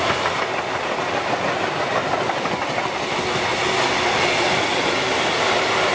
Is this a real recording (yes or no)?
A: yes